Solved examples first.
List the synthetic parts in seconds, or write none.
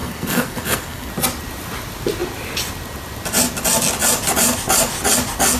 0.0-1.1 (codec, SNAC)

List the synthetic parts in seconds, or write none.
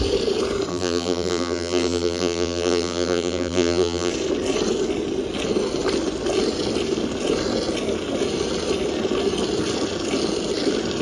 0.7-4.1 (vocoder, BigVGAN v2)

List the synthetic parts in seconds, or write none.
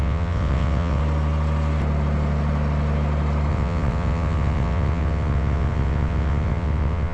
0.0-1.0 (vocoder, WaveNeXt); 3.5-7.1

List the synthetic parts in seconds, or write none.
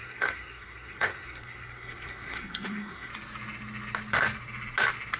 0.0-3.1 (codec, SNAC)